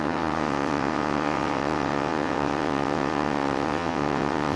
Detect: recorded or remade remade